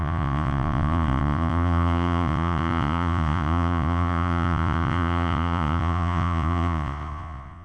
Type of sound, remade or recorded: remade